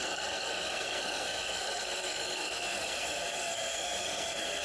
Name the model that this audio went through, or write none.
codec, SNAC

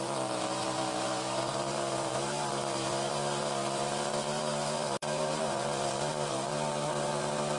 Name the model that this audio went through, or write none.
vocoder, BigVGAN v2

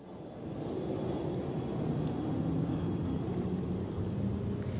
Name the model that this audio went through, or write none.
none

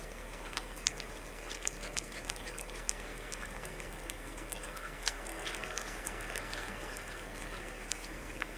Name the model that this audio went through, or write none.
codec, SNAC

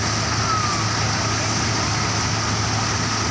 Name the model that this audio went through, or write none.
none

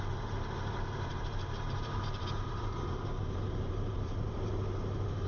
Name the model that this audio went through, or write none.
vocoder, BigVGAN v2